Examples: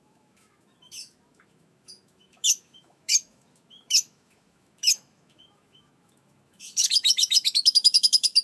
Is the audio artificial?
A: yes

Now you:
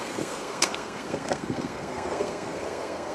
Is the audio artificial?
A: yes